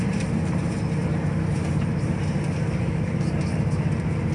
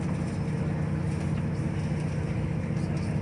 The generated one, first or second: first